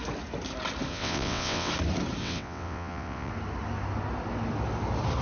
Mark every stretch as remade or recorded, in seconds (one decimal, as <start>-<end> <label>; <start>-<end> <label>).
0.0-0.9 recorded; 0.9-1.7 remade; 1.7-2.2 recorded; 2.2-3.3 remade; 3.3-5.2 recorded